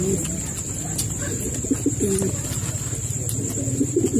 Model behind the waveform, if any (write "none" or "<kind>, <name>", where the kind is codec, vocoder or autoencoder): none